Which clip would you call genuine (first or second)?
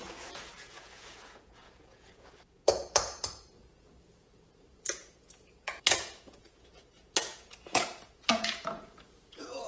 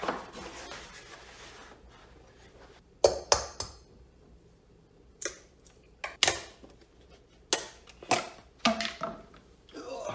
second